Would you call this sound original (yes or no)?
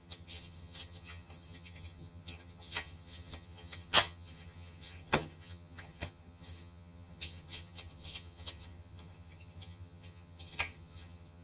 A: no